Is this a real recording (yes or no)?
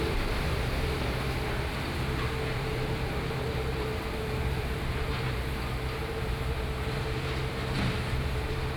no